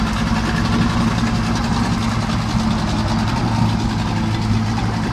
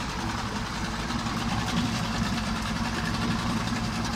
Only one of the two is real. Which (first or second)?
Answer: first